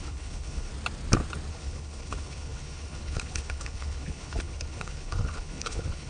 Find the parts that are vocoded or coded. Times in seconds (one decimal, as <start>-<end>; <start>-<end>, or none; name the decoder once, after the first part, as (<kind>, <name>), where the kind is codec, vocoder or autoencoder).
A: 0.0-0.7 (codec, HILCodec); 1.5-6.1